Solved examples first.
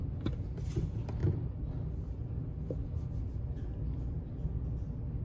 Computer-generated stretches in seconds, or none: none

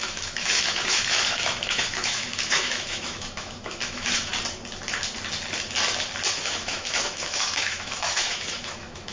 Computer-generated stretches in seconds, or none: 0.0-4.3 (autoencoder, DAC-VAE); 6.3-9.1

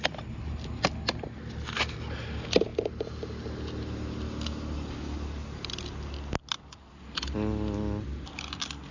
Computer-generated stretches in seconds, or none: none

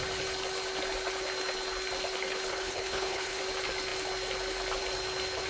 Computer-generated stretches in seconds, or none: 2.5-3.4 (codec, HILCodec)

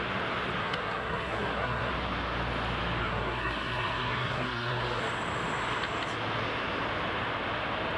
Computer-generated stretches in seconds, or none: 0.6-1.9 (codec, SNAC); 3.0-5.0

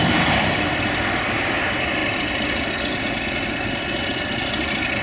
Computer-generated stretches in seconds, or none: none

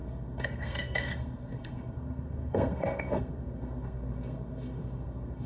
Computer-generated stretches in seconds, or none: 0.0-5.5 (codec, SNAC)

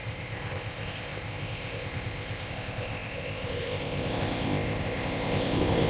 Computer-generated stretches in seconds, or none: 0.0-5.9 (codec, ZipCodec)